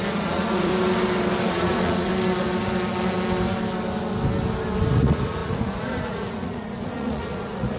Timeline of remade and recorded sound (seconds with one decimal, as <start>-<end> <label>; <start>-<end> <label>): 0.0-0.7 remade; 0.7-1.5 recorded; 1.5-2.1 remade; 2.1-4.9 recorded; 4.9-7.8 remade